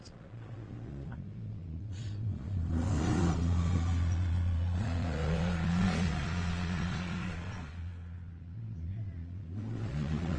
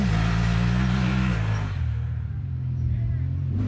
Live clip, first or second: second